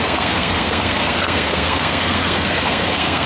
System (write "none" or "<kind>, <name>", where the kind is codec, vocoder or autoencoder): codec, SNAC